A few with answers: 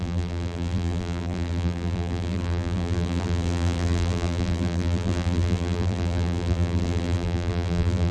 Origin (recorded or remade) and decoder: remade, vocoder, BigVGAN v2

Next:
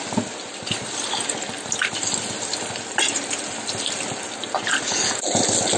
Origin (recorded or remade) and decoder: recorded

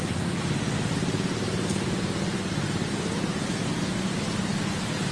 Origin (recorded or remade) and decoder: recorded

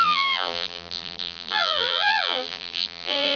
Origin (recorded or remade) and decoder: remade, vocoder, BigVGAN v2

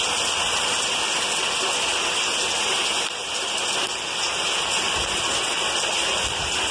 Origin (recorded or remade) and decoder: recorded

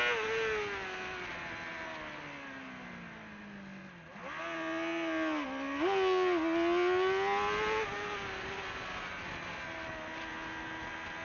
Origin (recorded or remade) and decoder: recorded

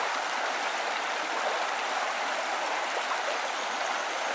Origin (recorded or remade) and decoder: recorded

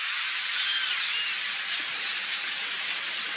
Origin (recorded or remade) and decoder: recorded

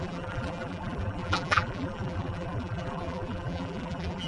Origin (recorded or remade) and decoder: remade, vocoder, BigVGAN v2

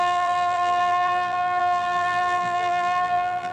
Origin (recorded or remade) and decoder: remade, vocoder, BigVGAN v2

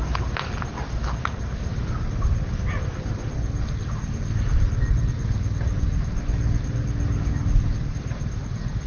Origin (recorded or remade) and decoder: recorded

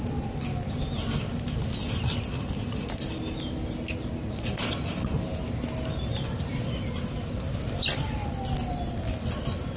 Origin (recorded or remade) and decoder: recorded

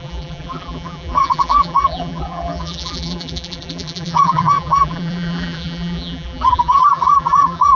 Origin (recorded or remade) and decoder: remade, vocoder, BigVGAN v2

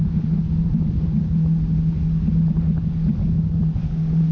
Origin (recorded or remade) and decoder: recorded